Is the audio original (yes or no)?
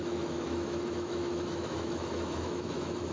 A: no